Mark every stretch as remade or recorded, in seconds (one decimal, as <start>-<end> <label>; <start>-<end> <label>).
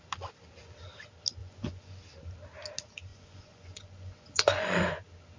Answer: 0.0-1.4 recorded; 1.4-2.0 remade; 2.0-3.1 recorded; 3.1-4.9 remade; 4.9-5.4 recorded